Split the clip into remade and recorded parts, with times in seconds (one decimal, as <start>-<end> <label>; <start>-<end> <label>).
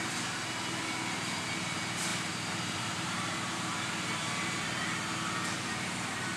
0.0-2.1 recorded; 2.1-3.8 remade; 3.8-6.4 recorded